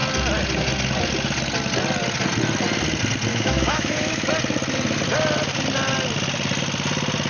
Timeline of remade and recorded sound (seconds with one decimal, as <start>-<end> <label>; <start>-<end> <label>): 0.0-3.3 recorded; 3.3-4.3 remade; 4.3-7.3 recorded